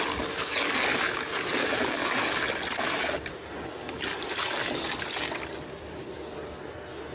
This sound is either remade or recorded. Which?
recorded